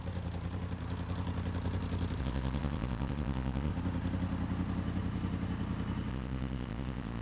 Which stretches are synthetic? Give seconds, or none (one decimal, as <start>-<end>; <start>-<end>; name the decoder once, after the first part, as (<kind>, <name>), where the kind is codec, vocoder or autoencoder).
2.2-3.7 (vocoder, Vocos); 6.1-7.2